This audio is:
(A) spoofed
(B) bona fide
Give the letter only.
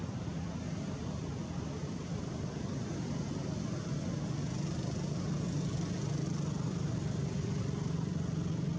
B